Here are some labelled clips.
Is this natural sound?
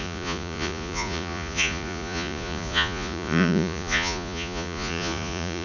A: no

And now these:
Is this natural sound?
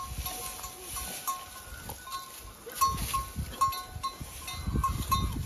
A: yes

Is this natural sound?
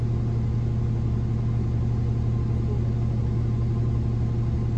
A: yes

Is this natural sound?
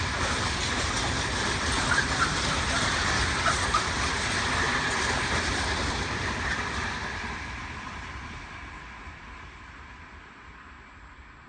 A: yes